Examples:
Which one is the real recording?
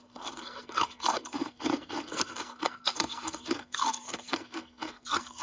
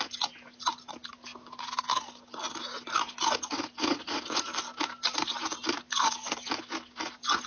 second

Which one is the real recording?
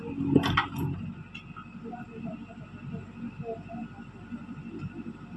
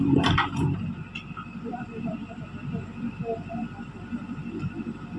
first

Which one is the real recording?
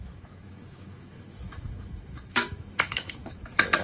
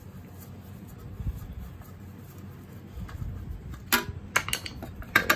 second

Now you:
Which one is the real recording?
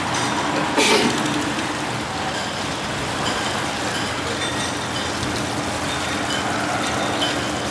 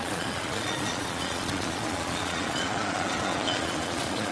first